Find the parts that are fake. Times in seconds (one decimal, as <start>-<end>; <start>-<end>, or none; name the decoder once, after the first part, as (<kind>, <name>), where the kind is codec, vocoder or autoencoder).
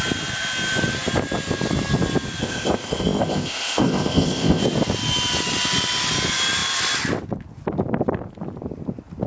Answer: 2.4-4.6 (codec, ZipCodec)